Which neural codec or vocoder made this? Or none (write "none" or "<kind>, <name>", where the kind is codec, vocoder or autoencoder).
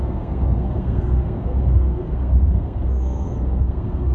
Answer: codec, SNAC